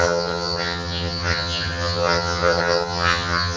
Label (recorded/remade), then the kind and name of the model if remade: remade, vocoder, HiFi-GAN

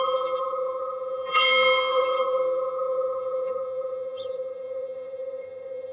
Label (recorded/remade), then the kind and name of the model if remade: remade, vocoder, HiFi-GAN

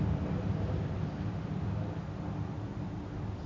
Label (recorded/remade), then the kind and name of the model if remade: recorded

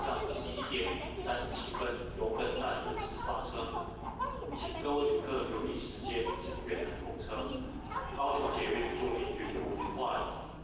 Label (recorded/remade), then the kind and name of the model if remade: recorded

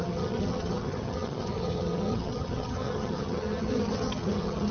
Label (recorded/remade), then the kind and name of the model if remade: remade, vocoder, HiFi-GAN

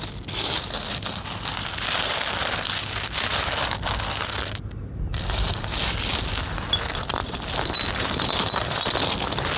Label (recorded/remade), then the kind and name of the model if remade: recorded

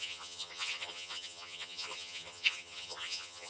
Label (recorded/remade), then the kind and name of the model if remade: remade, vocoder, HiFi-GAN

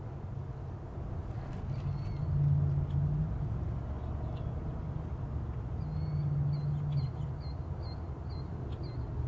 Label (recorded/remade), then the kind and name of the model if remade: recorded